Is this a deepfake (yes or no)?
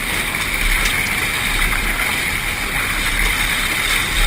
no